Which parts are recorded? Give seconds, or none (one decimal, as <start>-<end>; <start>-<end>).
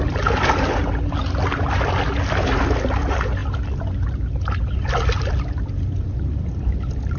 0.0-7.2